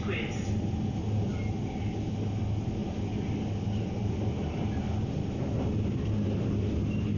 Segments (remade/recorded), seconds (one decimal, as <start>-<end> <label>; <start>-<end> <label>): 0.0-2.8 recorded; 2.8-4.1 remade; 4.1-7.2 recorded